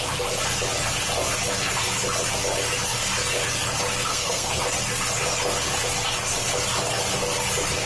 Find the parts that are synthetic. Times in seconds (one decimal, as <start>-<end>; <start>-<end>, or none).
4.1-4.6